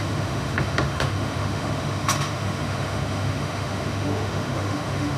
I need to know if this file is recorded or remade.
remade